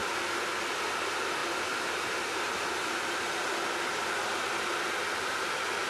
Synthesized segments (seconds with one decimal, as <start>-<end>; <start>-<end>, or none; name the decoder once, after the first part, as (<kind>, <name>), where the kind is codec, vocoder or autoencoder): none